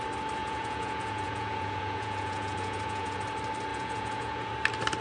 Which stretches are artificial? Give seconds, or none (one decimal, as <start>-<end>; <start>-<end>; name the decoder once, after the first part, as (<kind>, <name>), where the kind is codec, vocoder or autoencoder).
0.4-3.2 (vocoder, Vocos); 3.7-4.5